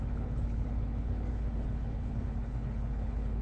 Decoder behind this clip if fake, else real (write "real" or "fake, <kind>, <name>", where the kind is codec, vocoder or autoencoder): fake, codec, HILCodec